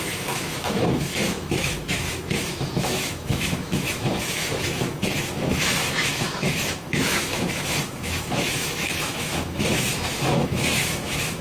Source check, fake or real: fake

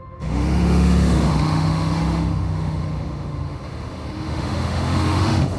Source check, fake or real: fake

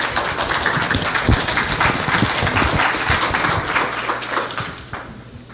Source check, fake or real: real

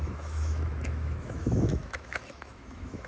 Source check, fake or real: fake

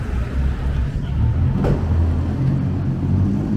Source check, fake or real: real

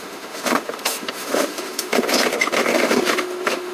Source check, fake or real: fake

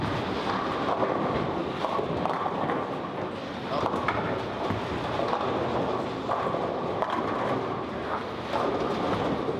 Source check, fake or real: real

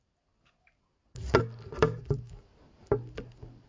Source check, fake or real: real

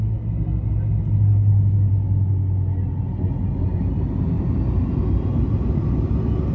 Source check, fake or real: real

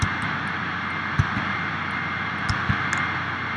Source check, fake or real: real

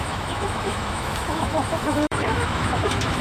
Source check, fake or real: fake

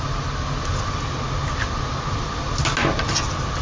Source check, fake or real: real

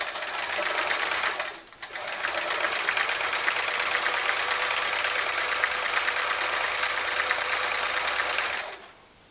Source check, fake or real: real